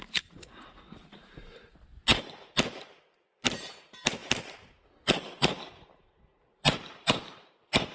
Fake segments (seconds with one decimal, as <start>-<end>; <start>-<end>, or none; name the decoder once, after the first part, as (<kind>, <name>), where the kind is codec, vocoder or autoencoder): 0.0-0.5 (vocoder, BigVGAN v2); 2.2-7.9

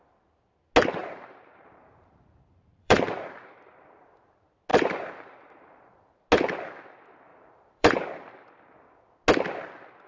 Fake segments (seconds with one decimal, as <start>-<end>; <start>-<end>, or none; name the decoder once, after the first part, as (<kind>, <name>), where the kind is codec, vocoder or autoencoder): 1.0-3.6 (vocoder, BigVGAN v2); 4.7-5.9; 7.3-8.0